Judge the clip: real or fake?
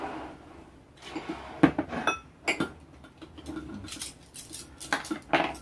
real